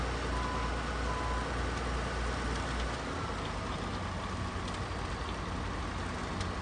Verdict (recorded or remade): recorded